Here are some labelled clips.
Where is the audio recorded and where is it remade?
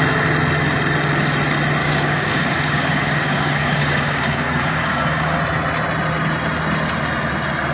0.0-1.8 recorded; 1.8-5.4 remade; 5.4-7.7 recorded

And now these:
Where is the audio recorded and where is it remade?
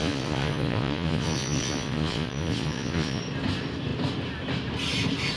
0.0-3.2 remade; 3.2-5.4 recorded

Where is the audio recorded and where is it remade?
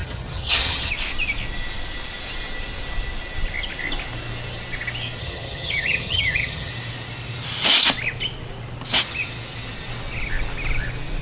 0.0-0.9 remade; 0.9-5.2 recorded; 5.2-6.7 remade; 6.7-11.2 recorded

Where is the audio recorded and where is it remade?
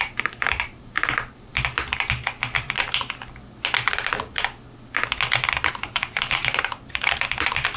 0.0-1.5 remade; 1.5-5.7 recorded; 5.7-7.8 remade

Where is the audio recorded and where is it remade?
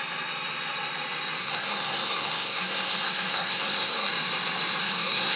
0.0-1.4 recorded; 1.4-4.1 remade; 4.1-4.8 recorded; 4.8-5.4 remade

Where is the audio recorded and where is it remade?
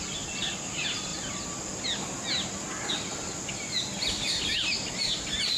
0.0-5.6 recorded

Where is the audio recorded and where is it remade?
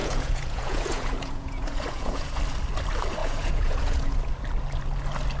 0.0-2.4 remade; 2.4-3.2 recorded; 3.2-4.3 remade; 4.3-5.4 recorded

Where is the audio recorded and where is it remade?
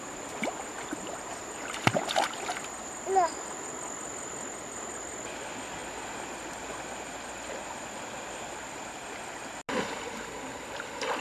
0.0-11.2 recorded